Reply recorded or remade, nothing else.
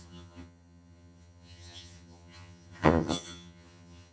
remade